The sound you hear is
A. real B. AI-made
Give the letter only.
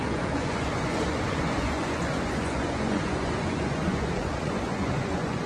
B